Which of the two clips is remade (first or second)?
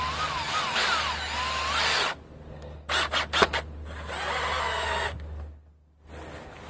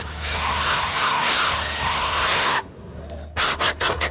second